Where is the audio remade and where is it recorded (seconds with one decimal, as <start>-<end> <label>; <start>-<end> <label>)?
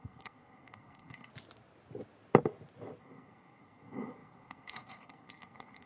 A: 0.0-1.3 remade; 1.3-3.0 recorded; 3.0-5.9 remade